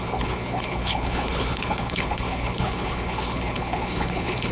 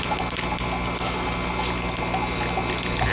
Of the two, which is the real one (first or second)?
second